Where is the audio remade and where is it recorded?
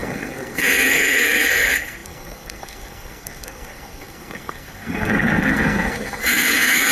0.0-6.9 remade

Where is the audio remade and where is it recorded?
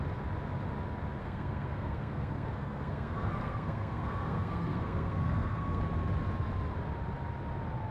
0.0-1.2 recorded; 1.2-5.8 remade; 5.8-7.9 recorded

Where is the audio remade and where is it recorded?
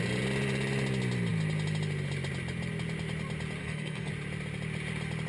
0.0-3.6 recorded; 3.6-4.1 remade; 4.1-5.3 recorded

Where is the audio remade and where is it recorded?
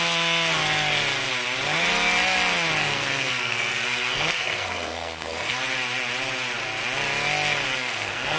0.0-2.8 recorded; 2.8-5.6 remade; 5.6-7.7 recorded; 7.7-8.4 remade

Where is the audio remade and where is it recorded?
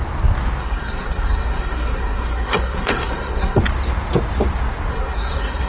0.0-0.6 recorded; 0.6-3.6 remade; 3.6-4.9 recorded; 4.9-5.7 remade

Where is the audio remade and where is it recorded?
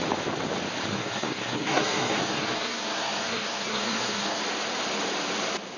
0.0-0.9 recorded; 0.9-4.4 remade; 4.4-5.8 recorded